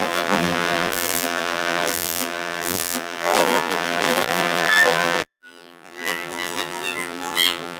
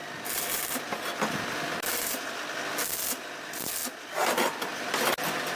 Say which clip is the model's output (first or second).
first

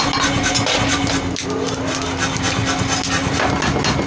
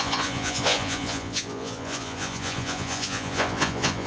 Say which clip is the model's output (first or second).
second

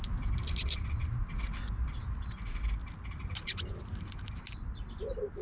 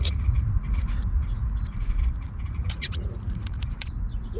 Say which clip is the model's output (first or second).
second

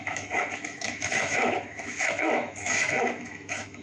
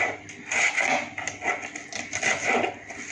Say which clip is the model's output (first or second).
first